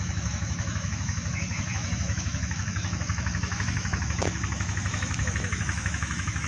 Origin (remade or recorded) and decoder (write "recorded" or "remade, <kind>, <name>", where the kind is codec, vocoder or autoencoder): remade, autoencoder, DAC-VAE